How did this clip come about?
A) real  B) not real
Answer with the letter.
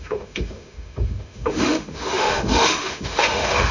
B